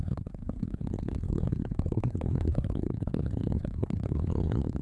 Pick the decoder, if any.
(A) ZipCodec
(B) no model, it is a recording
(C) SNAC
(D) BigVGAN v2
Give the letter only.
C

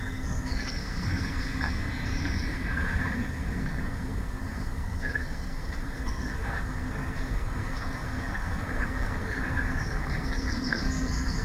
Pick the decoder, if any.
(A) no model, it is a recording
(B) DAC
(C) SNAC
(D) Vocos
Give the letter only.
C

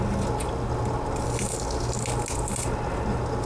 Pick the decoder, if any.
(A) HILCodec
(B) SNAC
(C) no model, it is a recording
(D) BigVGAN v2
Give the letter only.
C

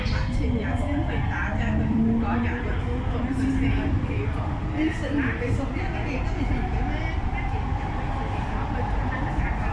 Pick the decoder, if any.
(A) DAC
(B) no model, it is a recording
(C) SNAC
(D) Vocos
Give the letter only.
B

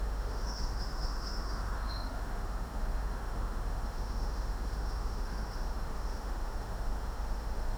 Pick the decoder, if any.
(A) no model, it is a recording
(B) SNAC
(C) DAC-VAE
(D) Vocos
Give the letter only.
C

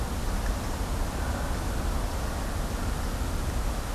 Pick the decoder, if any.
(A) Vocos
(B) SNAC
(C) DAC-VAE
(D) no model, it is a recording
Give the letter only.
D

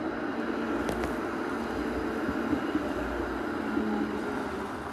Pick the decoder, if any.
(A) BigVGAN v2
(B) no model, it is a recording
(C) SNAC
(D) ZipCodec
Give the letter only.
B